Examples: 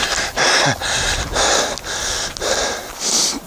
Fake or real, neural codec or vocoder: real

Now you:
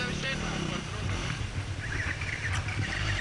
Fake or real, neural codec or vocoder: fake, vocoder, BigVGAN v2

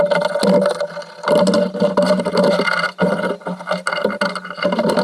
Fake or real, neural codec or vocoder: real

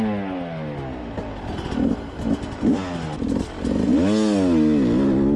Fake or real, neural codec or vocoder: real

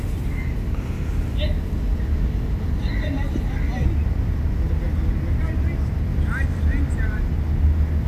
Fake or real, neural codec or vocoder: real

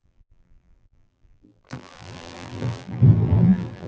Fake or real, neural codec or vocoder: fake, vocoder, BigVGAN v2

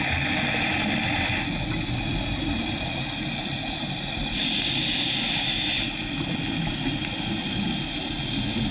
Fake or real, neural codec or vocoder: real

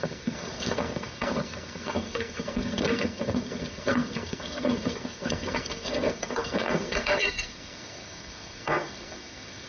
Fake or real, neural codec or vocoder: fake, codec, SNAC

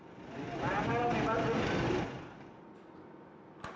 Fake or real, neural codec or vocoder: real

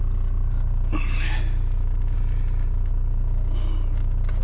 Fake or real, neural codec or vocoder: real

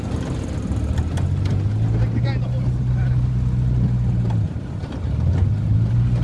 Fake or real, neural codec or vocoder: real